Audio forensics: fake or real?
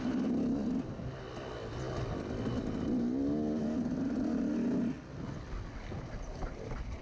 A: real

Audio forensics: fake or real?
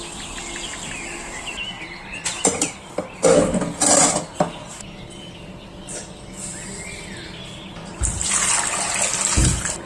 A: real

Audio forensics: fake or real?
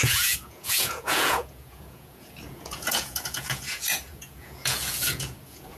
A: fake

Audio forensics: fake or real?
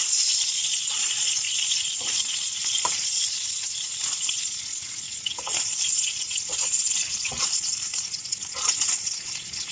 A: fake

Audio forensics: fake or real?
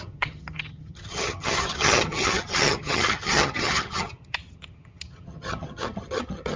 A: fake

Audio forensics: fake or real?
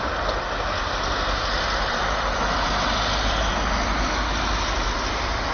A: real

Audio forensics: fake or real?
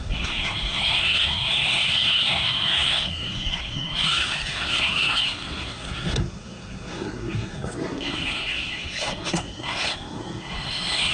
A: fake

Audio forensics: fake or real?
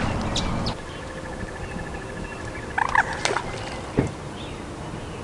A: real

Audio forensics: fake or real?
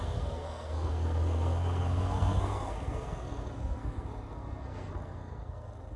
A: fake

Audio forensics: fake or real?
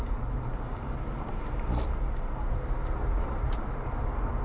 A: real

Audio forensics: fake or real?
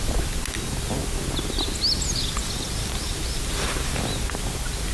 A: real